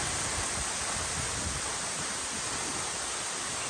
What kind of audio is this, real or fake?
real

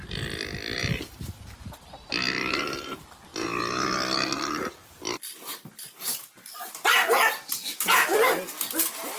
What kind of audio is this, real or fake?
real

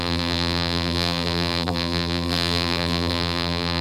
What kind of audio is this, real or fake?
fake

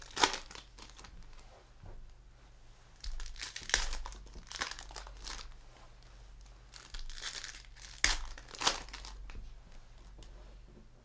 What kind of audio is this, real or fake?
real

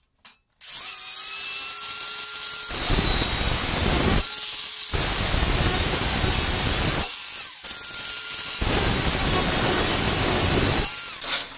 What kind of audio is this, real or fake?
real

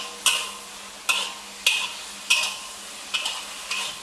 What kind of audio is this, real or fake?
real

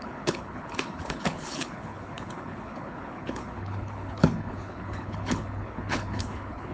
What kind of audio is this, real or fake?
fake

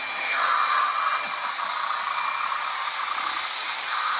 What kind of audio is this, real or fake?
real